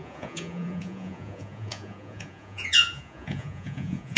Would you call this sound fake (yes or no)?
yes